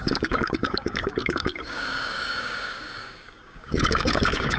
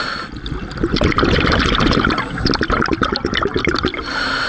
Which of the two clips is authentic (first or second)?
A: second